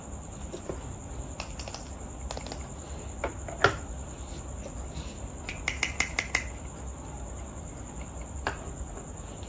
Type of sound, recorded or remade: recorded